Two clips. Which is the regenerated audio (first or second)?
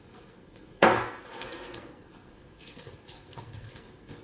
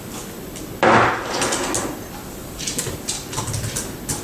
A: first